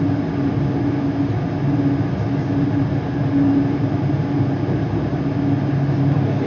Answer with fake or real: real